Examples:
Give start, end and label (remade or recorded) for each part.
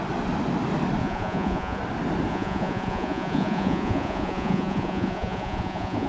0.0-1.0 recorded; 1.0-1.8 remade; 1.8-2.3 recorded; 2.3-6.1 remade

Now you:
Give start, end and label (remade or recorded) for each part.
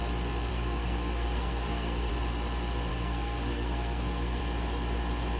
0.0-0.5 recorded; 0.5-2.1 remade; 2.1-2.9 recorded; 2.9-4.4 remade; 4.4-5.4 recorded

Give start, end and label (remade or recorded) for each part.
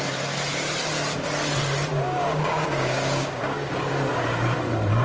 0.0-1.9 recorded; 1.9-3.9 remade; 3.9-5.0 recorded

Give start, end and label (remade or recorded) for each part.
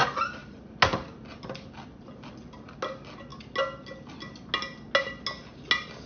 0.0-6.1 recorded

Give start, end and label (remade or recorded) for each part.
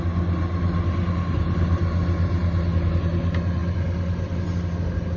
0.0-5.2 recorded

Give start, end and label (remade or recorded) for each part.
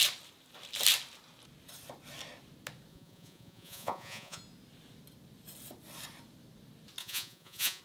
0.0-2.9 recorded; 2.9-4.4 remade; 4.4-7.0 recorded; 7.0-7.8 remade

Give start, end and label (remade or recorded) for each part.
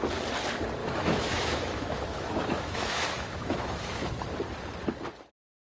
0.0-0.8 recorded; 0.8-4.3 remade; 4.3-5.8 recorded